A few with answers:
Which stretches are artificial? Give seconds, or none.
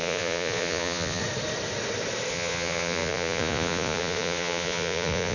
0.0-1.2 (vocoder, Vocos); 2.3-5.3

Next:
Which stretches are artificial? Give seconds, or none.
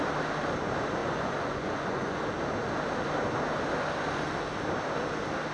1.0-2.2 (vocoder, Vocos)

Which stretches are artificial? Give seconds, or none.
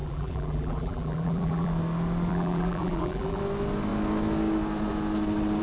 0.0-1.7 (vocoder, BigVGAN v2); 2.3-3.4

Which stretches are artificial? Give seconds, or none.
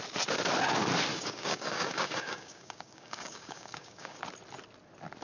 1.1-4.2 (codec, DAC)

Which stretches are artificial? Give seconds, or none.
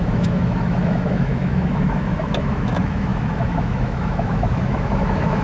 0.0-5.4 (autoencoder, DAC-VAE)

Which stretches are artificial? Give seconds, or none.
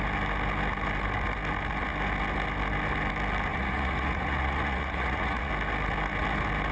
3.5-5.5 (vocoder, Vocos)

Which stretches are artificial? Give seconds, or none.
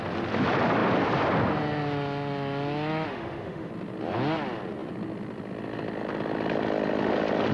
3.1-3.7 (autoencoder, DAC-VAE)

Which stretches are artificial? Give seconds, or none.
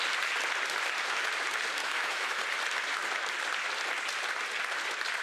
1.8-2.4 (autoencoder, DAC-VAE)